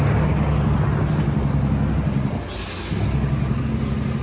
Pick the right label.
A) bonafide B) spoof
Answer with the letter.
A